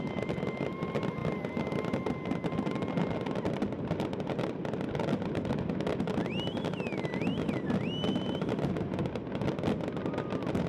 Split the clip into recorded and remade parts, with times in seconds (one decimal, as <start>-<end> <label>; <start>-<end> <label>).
0.0-10.7 recorded